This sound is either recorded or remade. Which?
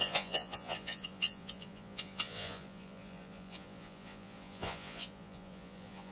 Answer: remade